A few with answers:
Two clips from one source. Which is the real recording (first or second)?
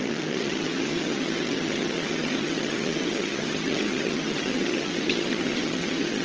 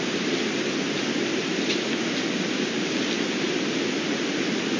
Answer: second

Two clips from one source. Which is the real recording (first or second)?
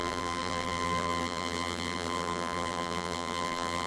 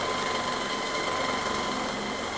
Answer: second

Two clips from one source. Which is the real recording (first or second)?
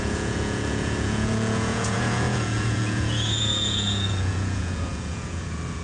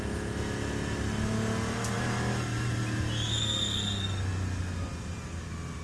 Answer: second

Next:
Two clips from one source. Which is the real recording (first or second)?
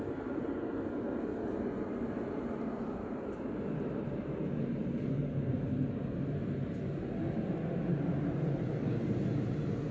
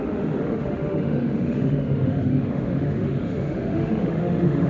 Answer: first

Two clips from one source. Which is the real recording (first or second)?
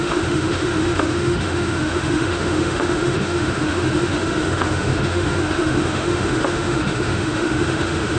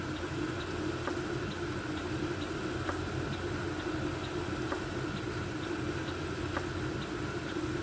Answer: second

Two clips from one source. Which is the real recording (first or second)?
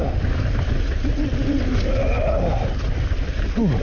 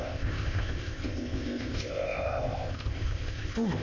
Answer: first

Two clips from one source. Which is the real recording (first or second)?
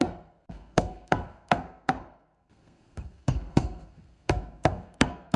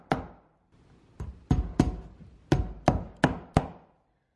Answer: second